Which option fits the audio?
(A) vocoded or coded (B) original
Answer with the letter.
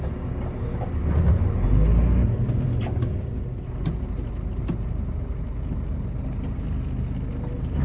B